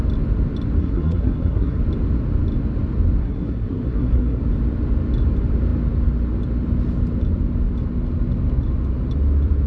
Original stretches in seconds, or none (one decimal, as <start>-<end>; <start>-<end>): 0.0-0.8; 1.8-3.2; 4.4-9.7